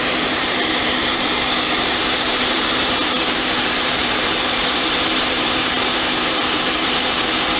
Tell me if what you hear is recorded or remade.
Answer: remade